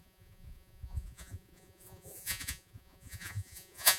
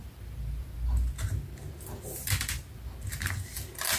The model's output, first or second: first